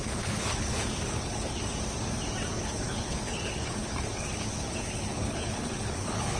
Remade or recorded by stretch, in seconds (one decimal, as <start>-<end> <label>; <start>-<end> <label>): 0.0-1.6 remade; 1.6-2.5 recorded; 2.5-6.4 remade